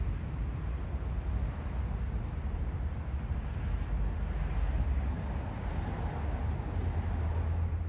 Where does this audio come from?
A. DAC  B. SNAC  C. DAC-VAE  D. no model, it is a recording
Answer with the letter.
D